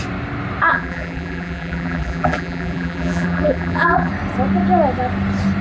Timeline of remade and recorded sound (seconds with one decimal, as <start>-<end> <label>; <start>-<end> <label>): 0.0-0.7 recorded; 0.7-4.1 remade; 4.1-5.6 recorded